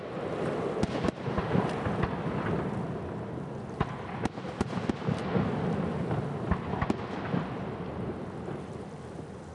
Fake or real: real